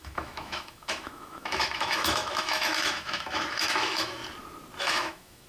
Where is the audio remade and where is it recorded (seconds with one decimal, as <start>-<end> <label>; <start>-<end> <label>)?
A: 0.0-4.2 remade; 4.2-4.8 recorded; 4.8-5.5 remade